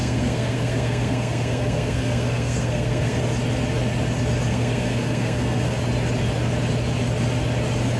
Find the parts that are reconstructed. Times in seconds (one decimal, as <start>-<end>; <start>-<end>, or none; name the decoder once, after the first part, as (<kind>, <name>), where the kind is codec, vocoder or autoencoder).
0.0-3.2 (codec, SNAC); 4.5-5.8